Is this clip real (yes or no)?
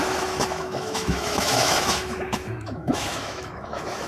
no